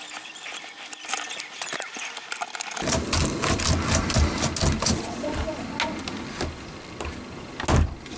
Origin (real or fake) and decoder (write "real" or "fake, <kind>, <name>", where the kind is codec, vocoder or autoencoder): real